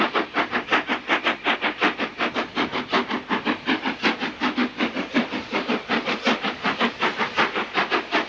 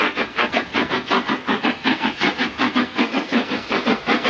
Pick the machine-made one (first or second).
second